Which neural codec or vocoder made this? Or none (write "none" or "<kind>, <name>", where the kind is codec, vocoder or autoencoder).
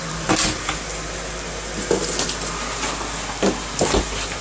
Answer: none